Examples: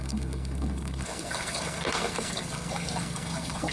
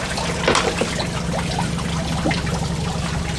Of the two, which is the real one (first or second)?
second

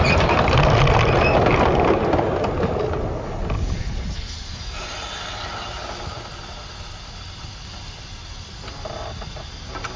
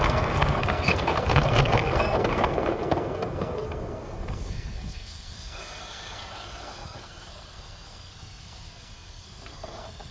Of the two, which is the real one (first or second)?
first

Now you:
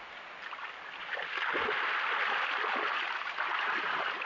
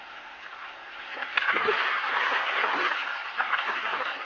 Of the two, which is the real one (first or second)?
first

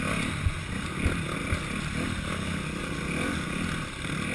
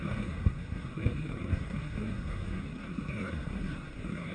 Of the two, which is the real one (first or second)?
first